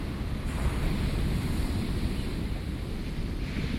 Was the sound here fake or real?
real